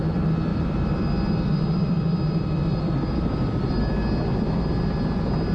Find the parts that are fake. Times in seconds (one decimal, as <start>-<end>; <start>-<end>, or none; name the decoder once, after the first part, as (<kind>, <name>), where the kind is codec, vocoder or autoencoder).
0.5-3.8 (vocoder, BigVGAN v2)